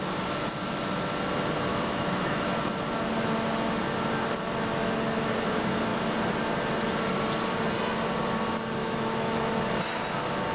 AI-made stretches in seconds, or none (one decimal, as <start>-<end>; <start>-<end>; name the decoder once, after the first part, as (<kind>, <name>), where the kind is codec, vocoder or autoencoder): 1.7-2.4 (autoencoder, DAC-VAE); 8.8-9.5